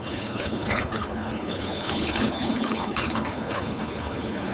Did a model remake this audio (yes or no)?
yes